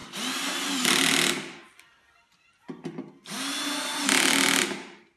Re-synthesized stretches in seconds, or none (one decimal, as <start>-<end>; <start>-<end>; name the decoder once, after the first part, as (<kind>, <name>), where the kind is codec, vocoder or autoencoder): 0.0-3.1 (vocoder, BigVGAN v2)